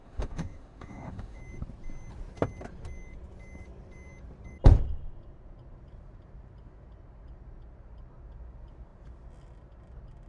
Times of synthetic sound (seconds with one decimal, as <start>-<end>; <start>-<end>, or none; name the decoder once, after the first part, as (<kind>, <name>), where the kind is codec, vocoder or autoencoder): 0.0-1.4 (autoencoder, DAC-VAE)